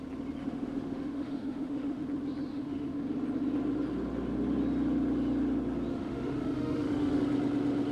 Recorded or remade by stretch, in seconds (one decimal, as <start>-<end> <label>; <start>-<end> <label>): 0.0-0.4 recorded; 0.4-2.0 remade; 2.0-2.5 recorded; 2.5-3.0 remade; 3.0-5.9 recorded; 5.9-7.2 remade; 7.2-7.9 recorded